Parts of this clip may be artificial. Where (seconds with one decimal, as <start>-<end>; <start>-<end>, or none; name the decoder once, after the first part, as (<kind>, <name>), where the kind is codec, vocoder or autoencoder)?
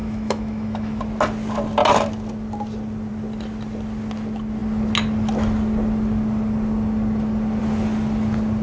0.0-1.0 (autoencoder, DAC-VAE)